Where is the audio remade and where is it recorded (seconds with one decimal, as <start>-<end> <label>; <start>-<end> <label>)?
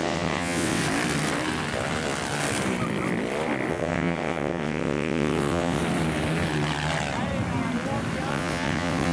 0.0-0.8 remade; 0.8-3.7 recorded; 3.7-5.8 remade; 5.8-8.3 recorded; 8.3-9.1 remade